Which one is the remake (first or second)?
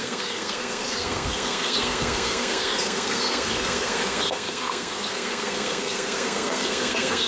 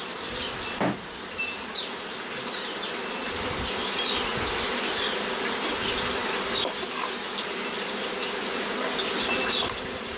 first